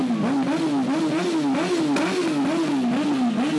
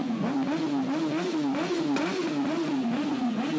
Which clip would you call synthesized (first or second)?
second